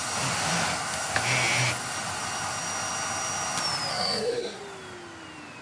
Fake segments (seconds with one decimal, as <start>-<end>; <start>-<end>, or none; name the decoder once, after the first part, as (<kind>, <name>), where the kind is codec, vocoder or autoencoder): 3.9-4.6 (codec, SNAC)